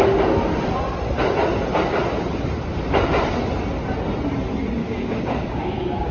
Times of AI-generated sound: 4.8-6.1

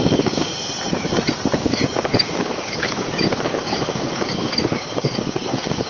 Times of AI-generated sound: 0.0-0.5; 1.5-5.9

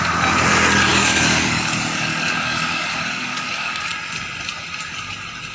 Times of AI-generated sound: 0.9-3.9

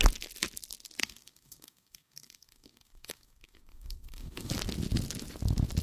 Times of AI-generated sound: 1.0-4.5

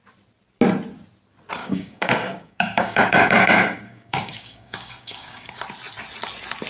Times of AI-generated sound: 1.6-5.6

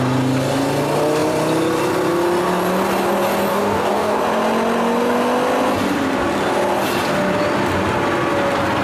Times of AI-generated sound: 3.5-4.2

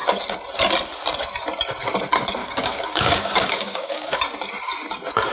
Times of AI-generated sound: 2.4-4.2

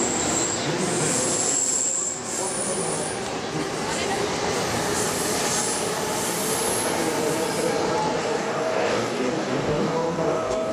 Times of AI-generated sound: 8.2-10.7